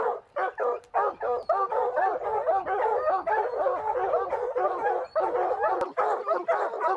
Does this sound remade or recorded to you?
recorded